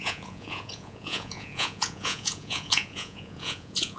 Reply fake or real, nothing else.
fake